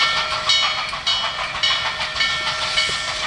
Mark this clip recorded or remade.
recorded